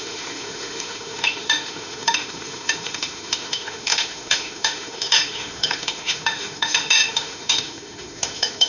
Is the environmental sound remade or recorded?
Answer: remade